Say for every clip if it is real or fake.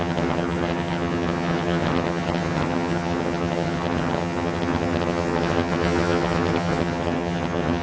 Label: fake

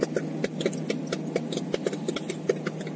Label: real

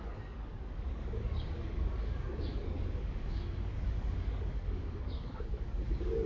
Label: fake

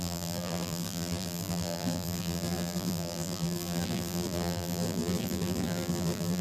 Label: fake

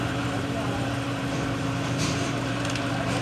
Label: fake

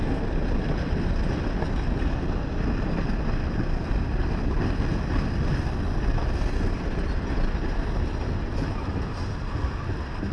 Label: real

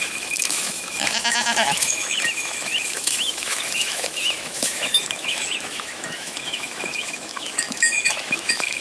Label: fake